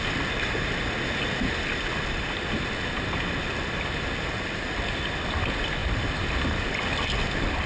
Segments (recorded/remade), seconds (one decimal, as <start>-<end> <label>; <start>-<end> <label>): 0.0-7.7 recorded